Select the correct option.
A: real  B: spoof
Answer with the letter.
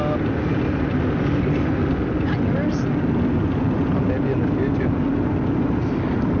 A